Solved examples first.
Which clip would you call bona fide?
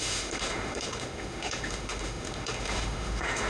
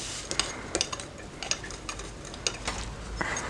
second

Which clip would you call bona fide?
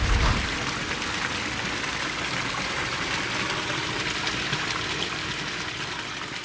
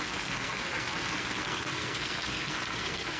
first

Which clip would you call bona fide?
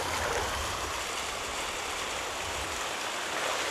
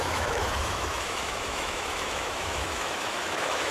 first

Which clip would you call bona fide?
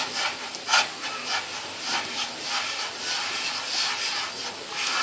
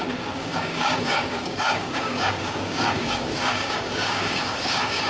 first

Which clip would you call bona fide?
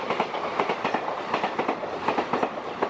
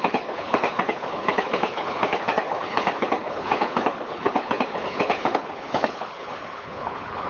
first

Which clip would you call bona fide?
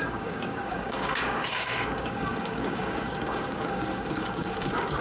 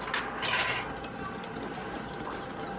second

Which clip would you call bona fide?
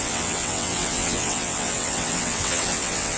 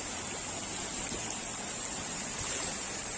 second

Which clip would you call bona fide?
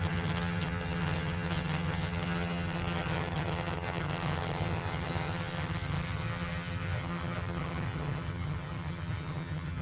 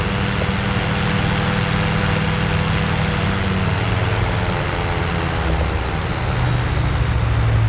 second